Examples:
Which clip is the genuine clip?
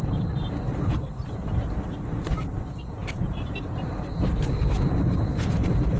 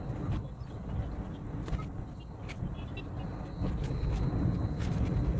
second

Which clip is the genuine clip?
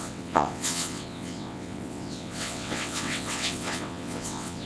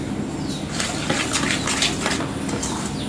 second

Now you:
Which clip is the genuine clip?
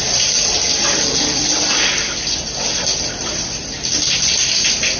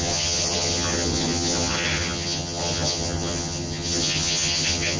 first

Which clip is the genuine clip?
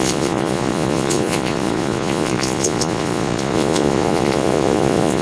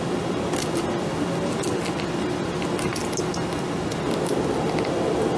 second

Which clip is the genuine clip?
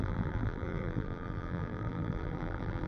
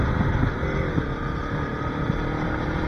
second